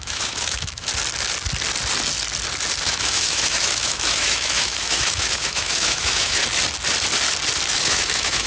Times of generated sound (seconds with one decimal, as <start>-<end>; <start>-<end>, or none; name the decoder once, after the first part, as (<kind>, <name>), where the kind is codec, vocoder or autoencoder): 0.0-0.9 (autoencoder, DAC-VAE); 2.8-6.4; 7.7-8.5